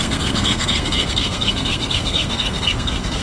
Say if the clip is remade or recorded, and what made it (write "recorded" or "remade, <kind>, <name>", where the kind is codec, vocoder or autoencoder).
remade, codec, SNAC